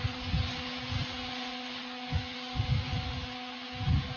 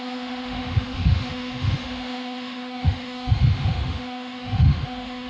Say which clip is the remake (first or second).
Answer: second